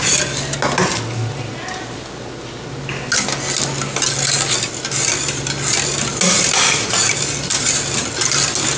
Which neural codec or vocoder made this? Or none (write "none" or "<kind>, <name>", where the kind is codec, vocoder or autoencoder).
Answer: none